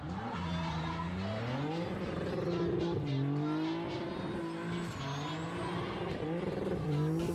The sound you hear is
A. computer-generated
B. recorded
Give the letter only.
B